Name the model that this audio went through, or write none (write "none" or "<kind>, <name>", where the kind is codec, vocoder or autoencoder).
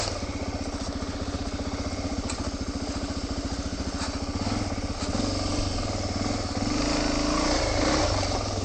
none